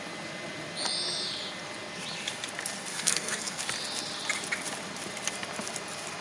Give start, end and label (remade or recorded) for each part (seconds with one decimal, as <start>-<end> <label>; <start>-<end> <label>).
0.0-2.9 recorded; 2.9-3.6 remade; 3.6-6.2 recorded